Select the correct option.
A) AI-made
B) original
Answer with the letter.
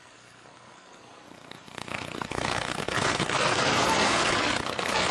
A